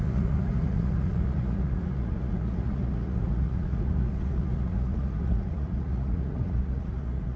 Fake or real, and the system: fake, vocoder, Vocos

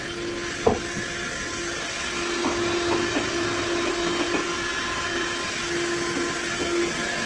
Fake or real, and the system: real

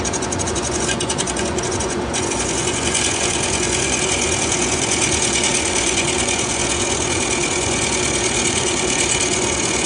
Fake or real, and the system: fake, vocoder, Vocos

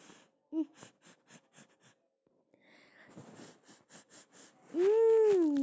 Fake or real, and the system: real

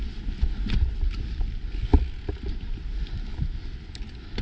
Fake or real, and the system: real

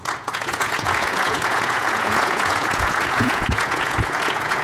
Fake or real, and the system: fake, vocoder, Vocos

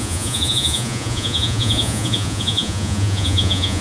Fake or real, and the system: fake, vocoder, Vocos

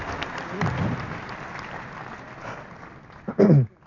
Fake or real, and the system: real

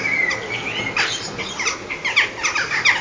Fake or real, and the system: real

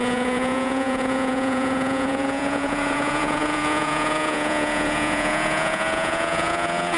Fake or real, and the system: fake, vocoder, Vocos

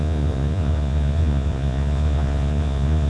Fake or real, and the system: fake, vocoder, Vocos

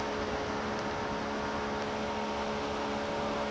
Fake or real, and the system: real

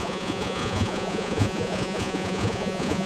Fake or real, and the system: fake, vocoder, Vocos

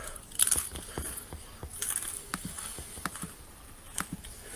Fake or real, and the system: real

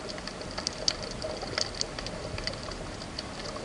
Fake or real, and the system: real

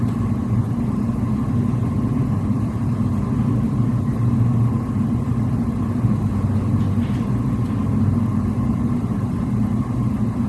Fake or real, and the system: real